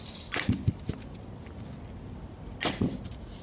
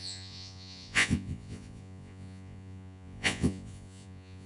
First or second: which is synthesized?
second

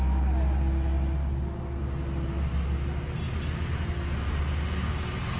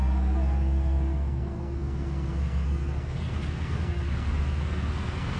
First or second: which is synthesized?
second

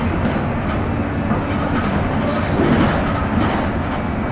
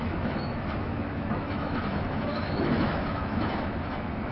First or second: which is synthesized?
second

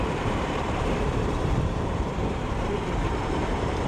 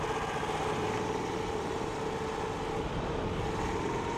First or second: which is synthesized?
first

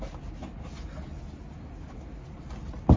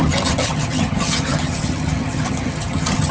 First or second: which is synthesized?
second